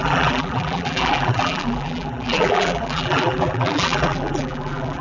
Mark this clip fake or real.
fake